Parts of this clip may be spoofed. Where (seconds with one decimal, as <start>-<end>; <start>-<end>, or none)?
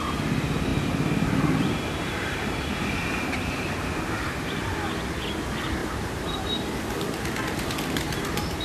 0.7-4.9; 5.8-6.7